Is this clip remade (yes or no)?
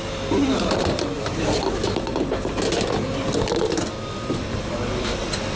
no